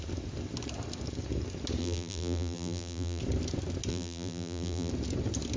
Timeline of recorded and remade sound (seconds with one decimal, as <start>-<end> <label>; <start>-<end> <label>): 0.0-1.8 recorded; 1.8-3.2 remade; 3.2-3.9 recorded; 3.9-4.9 remade; 4.9-5.6 recorded